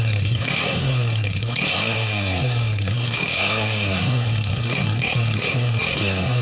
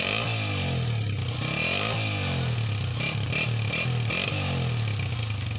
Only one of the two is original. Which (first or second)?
second